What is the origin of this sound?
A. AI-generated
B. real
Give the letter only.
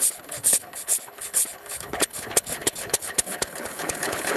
A